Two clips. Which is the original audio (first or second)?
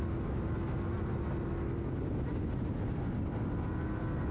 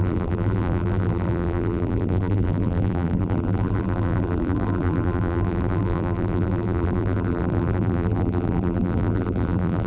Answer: first